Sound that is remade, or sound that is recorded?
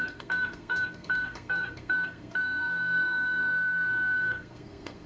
remade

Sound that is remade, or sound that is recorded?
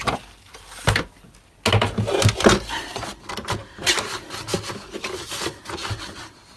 recorded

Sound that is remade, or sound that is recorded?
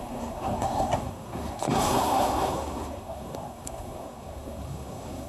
remade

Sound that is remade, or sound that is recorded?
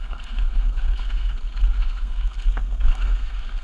remade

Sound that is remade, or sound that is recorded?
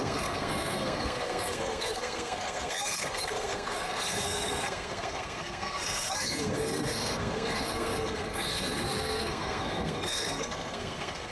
remade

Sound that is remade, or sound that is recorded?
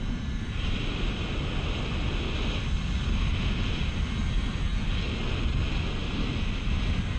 recorded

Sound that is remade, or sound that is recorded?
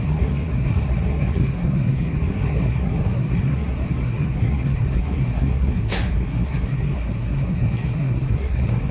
remade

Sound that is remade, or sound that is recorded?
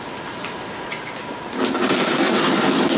recorded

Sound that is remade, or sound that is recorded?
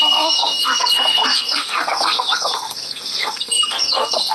remade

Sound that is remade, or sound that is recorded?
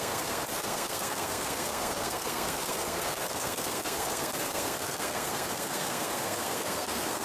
remade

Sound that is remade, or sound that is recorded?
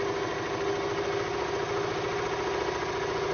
recorded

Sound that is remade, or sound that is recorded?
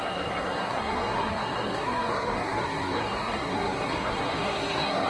remade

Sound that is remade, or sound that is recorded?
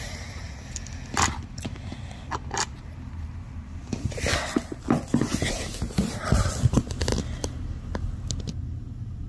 recorded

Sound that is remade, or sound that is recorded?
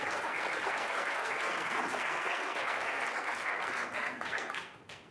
remade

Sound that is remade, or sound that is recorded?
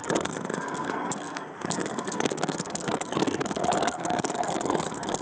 remade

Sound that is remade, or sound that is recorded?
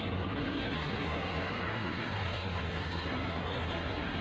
remade